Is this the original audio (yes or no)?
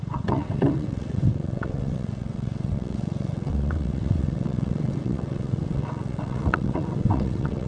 no